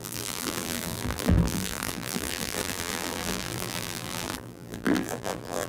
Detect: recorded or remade remade